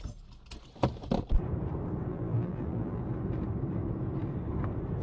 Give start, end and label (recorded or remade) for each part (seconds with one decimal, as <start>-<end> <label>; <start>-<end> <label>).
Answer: 0.0-2.1 recorded; 2.1-3.0 remade; 3.0-5.0 recorded

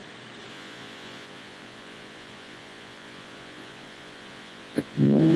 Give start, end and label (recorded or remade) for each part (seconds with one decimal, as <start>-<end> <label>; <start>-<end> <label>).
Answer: 0.0-0.5 recorded; 0.5-5.4 remade

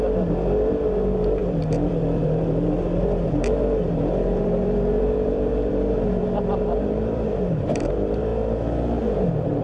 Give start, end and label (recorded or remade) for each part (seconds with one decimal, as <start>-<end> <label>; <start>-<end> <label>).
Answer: 0.0-9.6 remade

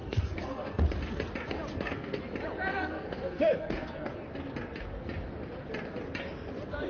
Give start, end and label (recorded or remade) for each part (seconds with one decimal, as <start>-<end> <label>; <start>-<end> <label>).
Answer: 0.0-0.8 remade; 0.8-1.7 recorded; 1.7-2.2 remade; 2.2-2.7 recorded; 2.7-4.1 remade; 4.1-6.9 recorded

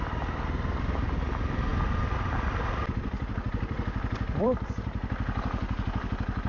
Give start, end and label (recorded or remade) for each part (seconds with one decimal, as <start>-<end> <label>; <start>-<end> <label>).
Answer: 0.0-6.5 remade

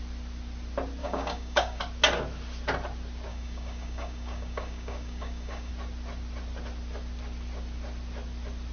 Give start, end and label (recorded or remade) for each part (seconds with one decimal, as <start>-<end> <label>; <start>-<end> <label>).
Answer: 0.0-1.0 recorded; 1.0-1.8 remade; 1.8-3.3 recorded; 3.3-5.7 remade; 5.7-8.7 recorded

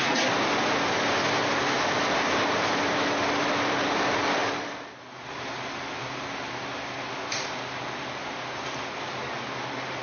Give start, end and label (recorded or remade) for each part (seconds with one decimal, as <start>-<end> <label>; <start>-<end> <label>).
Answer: 0.0-4.4 recorded; 4.4-5.3 remade; 5.3-10.0 recorded

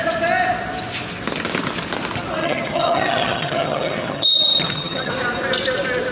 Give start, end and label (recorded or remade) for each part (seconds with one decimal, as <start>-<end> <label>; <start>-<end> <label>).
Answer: 0.0-2.4 recorded; 2.4-5.1 remade; 5.1-6.1 recorded